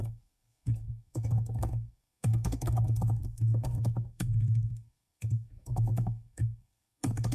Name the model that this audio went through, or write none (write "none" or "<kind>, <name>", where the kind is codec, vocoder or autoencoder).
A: codec, SNAC